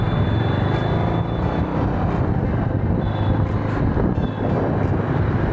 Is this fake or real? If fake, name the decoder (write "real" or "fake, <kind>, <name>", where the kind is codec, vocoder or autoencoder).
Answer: real